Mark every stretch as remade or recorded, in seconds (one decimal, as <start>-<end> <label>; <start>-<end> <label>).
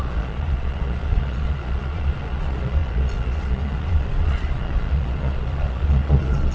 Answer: 0.0-6.5 remade